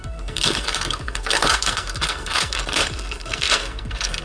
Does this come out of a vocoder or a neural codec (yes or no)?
yes